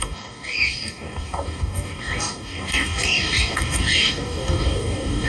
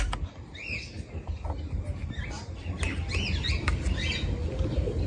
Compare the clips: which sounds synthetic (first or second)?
first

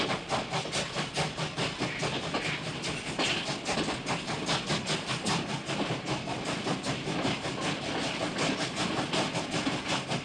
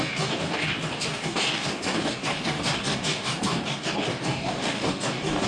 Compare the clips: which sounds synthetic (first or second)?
second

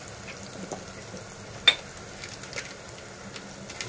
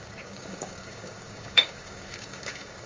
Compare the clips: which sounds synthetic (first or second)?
second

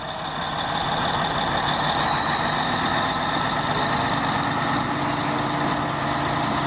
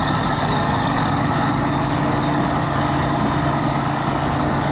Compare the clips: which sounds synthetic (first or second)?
second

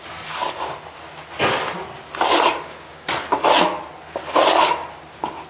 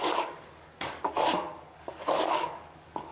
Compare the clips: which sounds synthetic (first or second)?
second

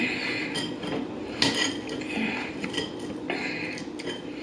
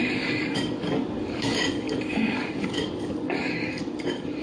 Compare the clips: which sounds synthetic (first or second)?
second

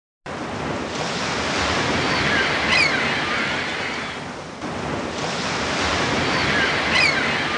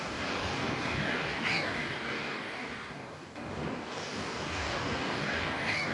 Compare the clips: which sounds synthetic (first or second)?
second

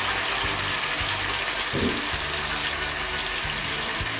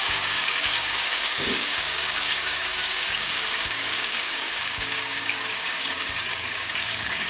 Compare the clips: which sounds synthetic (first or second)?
second